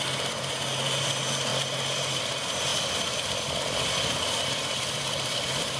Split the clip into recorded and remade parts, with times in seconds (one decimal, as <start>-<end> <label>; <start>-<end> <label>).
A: 0.0-2.7 recorded; 2.7-5.8 remade